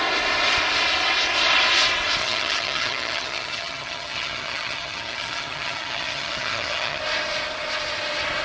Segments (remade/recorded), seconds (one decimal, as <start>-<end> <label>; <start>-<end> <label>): 0.0-2.2 recorded; 2.2-7.0 remade; 7.0-8.4 recorded